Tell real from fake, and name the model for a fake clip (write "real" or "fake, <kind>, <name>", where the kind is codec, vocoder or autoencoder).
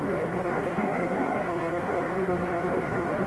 fake, codec, SNAC